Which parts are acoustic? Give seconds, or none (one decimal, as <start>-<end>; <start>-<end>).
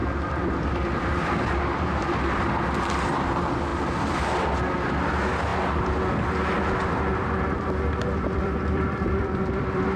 2.2-7.1